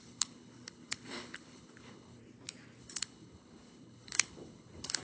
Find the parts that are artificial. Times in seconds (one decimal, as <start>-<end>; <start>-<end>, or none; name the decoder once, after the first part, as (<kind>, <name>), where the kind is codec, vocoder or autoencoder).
0.0-2.2 (codec, HILCodec); 2.8-5.0